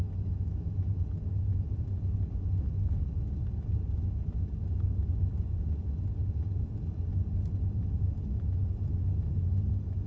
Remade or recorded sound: recorded